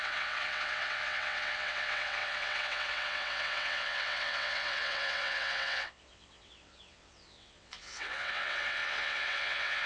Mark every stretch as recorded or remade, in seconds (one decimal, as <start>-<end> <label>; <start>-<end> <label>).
0.0-9.9 remade